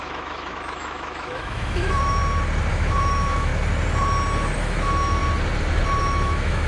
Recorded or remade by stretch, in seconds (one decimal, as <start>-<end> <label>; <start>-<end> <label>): 0.0-2.2 remade; 2.2-2.7 recorded; 2.7-3.5 remade; 3.5-4.6 recorded; 4.6-5.2 remade; 5.2-6.0 recorded; 6.0-6.7 remade